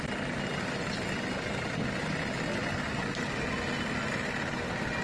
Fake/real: real